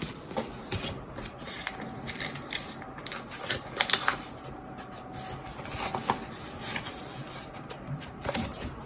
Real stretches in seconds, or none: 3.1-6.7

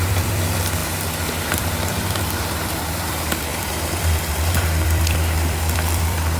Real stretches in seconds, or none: 0.8-1.4

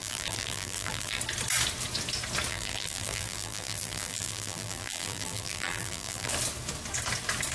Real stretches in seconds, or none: 1.2-2.5; 6.3-7.5

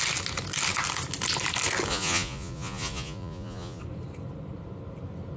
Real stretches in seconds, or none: 0.0-1.9; 3.8-5.4